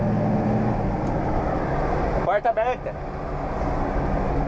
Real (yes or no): yes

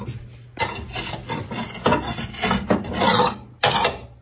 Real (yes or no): yes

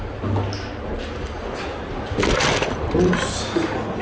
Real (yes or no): yes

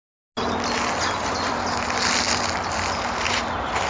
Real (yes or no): yes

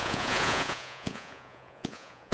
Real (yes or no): no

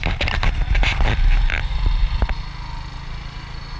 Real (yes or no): yes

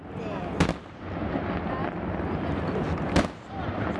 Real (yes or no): yes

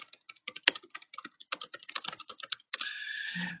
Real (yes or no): yes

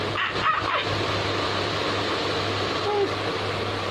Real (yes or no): yes